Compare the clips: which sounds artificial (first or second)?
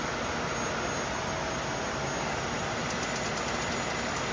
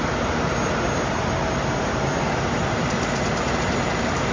second